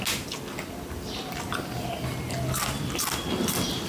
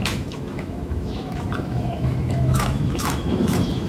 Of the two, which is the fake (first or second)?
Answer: second